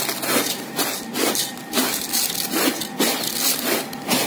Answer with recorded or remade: recorded